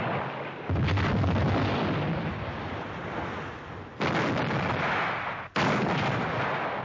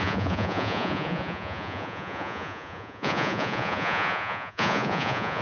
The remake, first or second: second